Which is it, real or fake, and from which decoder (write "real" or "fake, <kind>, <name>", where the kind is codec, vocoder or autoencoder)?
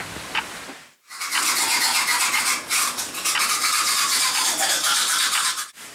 real